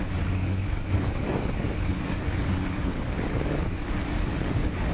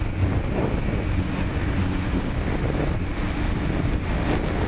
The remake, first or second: first